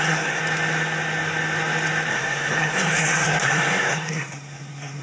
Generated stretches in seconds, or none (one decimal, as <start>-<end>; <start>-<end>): 0.0-0.4; 2.1-5.0